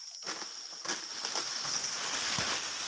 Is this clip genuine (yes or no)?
yes